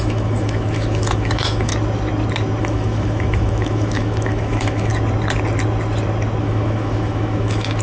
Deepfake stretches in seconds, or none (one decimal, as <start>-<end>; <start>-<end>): 0.0-1.7; 2.6-4.9; 6.4-7.8